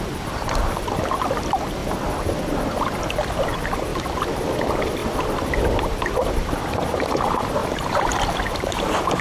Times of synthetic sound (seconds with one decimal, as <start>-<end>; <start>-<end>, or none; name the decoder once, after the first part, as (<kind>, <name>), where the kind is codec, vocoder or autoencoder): 0.0-1.8 (vocoder, BigVGAN v2); 2.4-3.9; 4.4-5.0; 5.6-9.2